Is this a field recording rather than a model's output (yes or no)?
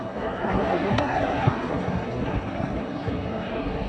no